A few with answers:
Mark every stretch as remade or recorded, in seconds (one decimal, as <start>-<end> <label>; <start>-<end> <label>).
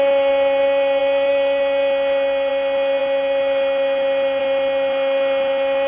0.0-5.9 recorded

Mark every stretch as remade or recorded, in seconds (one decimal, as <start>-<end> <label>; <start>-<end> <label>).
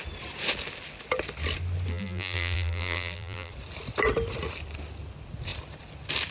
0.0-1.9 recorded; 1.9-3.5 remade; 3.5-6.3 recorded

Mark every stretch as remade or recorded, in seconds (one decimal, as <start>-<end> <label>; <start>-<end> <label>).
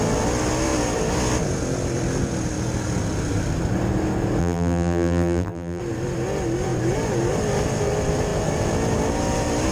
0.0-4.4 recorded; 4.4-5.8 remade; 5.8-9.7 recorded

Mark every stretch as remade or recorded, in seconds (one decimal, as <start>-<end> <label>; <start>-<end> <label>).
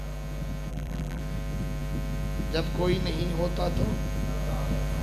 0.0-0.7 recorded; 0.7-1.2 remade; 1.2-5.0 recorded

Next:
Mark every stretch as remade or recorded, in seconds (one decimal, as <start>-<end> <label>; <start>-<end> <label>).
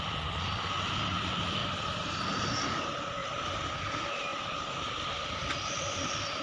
0.0-1.6 recorded; 1.6-2.2 remade; 2.2-3.2 recorded; 3.2-3.7 remade; 3.7-6.4 recorded